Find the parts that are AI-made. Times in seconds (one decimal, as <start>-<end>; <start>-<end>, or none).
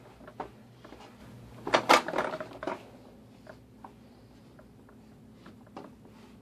none